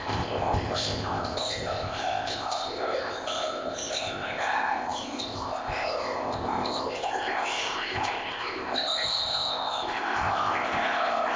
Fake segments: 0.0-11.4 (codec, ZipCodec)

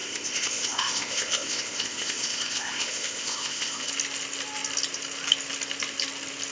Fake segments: 0.0-3.9 (codec, ZipCodec)

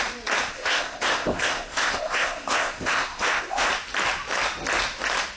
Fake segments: 0.5-3.7 (codec, ZipCodec)

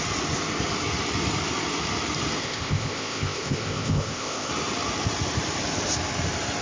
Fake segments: 2.4-4.5 (codec, ZipCodec)

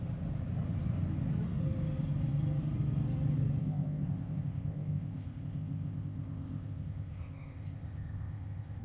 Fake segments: 3.6-8.8 (codec, ZipCodec)